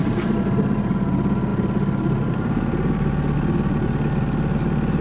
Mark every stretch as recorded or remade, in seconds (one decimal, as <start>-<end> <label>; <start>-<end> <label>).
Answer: 0.0-0.9 remade; 0.9-1.5 recorded; 1.5-3.1 remade; 3.1-5.0 recorded